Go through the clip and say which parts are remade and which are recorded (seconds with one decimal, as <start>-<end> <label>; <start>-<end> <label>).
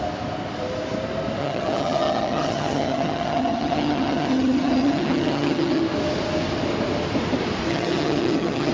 0.0-1.4 recorded; 1.4-5.8 remade; 5.8-7.7 recorded; 7.7-8.7 remade